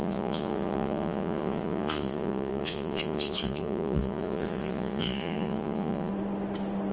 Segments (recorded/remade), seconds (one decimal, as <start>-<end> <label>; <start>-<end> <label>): 0.0-6.1 remade; 6.1-6.9 recorded